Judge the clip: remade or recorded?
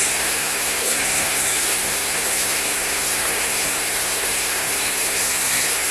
remade